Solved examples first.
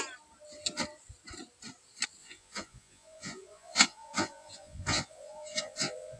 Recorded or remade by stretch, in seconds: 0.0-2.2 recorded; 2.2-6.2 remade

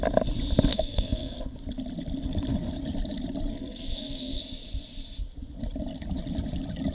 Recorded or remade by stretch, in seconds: 0.0-0.7 recorded; 0.7-1.5 remade; 1.5-3.5 recorded; 3.5-4.4 remade; 4.4-6.9 recorded

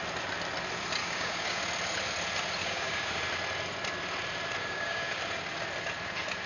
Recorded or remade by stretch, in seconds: 0.0-1.0 recorded; 1.0-1.6 remade; 1.6-2.6 recorded; 2.6-3.2 remade; 3.2-4.6 recorded; 4.6-5.2 remade; 5.2-6.5 recorded

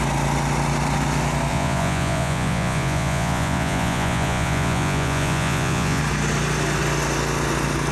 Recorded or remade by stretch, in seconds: 0.0-1.5 recorded; 1.5-6.0 remade; 6.0-7.9 recorded

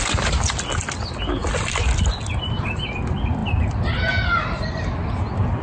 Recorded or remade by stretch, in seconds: 0.0-5.6 recorded

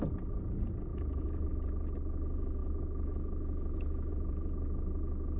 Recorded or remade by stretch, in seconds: 0.0-0.9 recorded; 0.9-1.5 remade; 1.5-2.6 recorded; 2.6-4.1 remade; 4.1-5.4 recorded